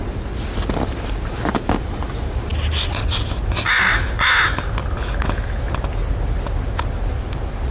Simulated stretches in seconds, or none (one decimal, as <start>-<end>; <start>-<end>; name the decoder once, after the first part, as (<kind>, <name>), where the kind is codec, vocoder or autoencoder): none